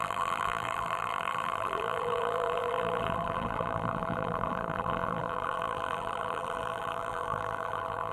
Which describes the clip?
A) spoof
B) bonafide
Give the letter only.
A